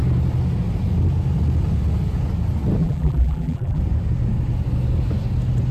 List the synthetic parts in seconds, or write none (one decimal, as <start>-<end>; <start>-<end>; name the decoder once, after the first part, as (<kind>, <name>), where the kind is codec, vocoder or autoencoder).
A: 2.8-3.8 (vocoder, BigVGAN v2)